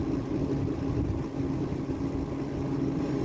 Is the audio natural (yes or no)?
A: yes